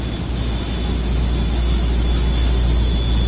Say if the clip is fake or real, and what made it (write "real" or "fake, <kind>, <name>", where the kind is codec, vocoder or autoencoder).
real